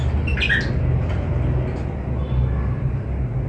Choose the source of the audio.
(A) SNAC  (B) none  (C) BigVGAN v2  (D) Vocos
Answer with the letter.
B